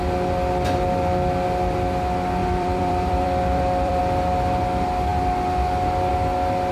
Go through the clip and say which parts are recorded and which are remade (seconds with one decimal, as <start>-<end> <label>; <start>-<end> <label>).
0.0-2.4 recorded; 2.4-4.0 remade; 4.0-6.7 recorded